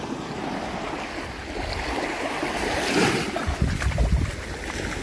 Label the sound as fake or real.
real